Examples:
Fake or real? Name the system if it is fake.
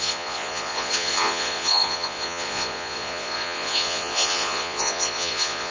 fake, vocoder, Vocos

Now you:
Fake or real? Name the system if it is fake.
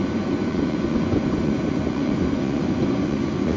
fake, vocoder, Vocos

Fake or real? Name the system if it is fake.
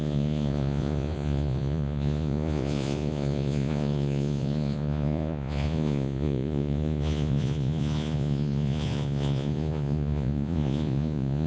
fake, vocoder, Vocos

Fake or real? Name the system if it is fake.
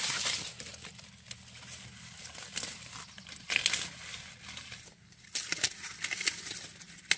real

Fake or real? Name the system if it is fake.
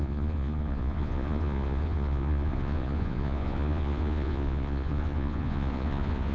fake, vocoder, Vocos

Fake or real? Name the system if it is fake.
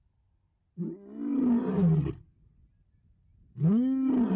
real